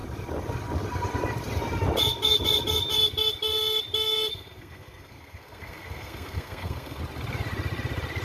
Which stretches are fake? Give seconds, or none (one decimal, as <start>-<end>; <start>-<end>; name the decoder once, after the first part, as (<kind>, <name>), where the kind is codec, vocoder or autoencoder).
4.3-7.0 (codec, SNAC)